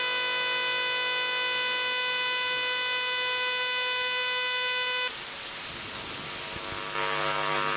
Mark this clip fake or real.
real